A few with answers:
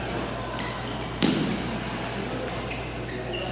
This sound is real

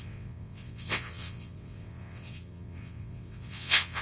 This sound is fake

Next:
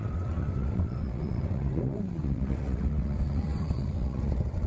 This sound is fake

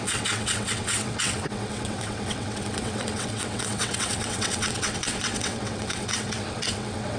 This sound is fake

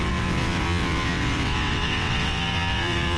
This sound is fake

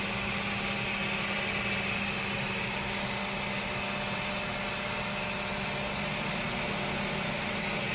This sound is real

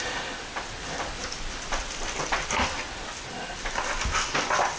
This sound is real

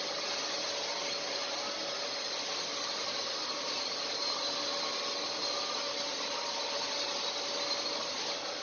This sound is real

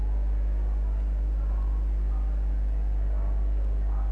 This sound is real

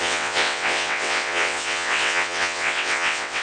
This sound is fake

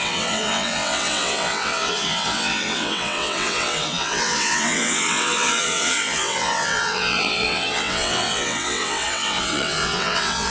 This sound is fake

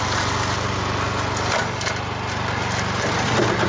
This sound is real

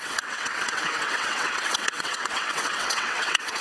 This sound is fake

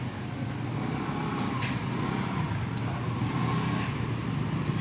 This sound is real